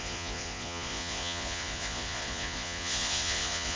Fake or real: fake